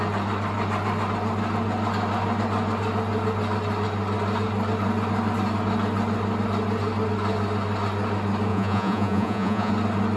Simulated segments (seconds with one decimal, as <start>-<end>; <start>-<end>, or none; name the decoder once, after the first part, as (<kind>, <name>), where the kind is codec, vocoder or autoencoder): 8.5-9.7 (vocoder, Vocos)